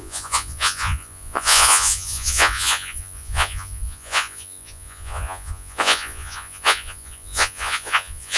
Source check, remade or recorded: remade